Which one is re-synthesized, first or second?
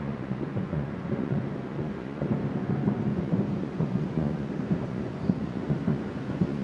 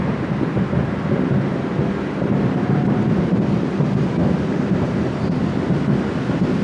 first